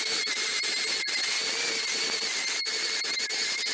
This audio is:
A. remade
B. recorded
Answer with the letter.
B